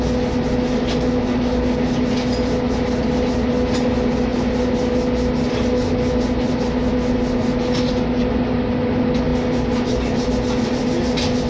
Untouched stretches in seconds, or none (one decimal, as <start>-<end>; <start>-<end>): 0.0-11.5